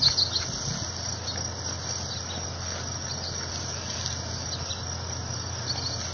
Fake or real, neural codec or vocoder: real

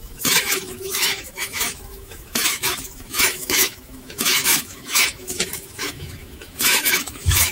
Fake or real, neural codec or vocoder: fake, autoencoder, DAC-VAE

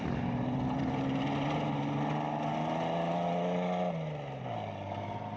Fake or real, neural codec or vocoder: real